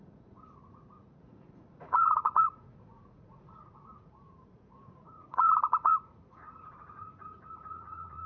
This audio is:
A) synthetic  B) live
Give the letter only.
A